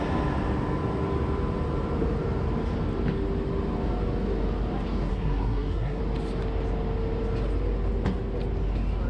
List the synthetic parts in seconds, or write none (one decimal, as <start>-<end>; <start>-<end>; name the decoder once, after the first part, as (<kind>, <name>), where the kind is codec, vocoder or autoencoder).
5.1-6.0 (codec, SNAC)